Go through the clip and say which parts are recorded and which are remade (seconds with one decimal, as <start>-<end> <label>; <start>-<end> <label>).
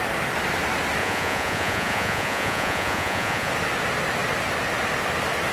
0.0-1.0 recorded; 1.0-3.5 remade; 3.5-5.5 recorded